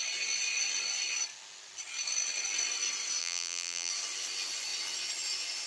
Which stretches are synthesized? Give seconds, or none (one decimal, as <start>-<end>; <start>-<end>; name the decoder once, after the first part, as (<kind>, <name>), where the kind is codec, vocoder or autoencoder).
3.2-3.9 (vocoder, BigVGAN v2)